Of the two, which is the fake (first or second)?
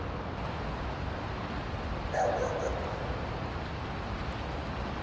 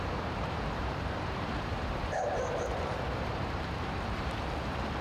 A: second